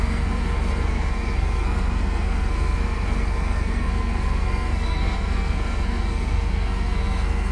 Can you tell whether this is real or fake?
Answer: fake